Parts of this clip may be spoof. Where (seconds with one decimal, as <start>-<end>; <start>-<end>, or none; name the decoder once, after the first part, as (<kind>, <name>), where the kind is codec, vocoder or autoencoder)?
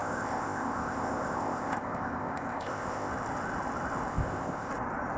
0.0-3.1 (codec, ZipCodec); 4.1-4.7